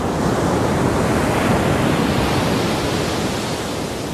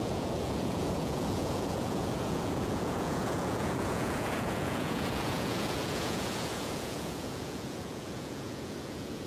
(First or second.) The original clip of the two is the first